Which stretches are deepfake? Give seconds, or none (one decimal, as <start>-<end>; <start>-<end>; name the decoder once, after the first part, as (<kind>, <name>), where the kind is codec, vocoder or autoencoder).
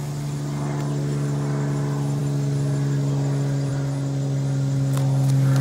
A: none